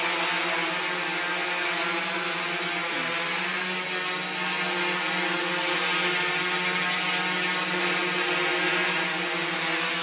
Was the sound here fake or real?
real